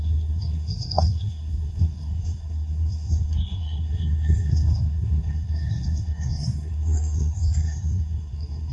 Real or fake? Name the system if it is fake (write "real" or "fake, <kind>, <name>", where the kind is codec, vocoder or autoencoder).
fake, codec, SNAC